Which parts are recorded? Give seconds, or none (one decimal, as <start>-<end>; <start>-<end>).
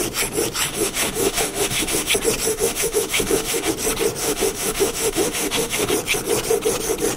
0.0-0.7; 2.1-2.5; 3.7-4.2; 5.9-7.2